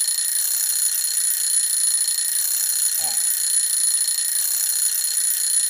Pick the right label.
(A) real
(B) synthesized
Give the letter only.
A